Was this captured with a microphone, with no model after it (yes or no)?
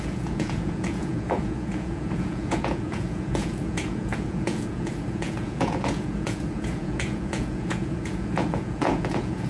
no